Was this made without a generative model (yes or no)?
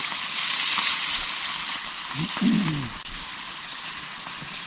yes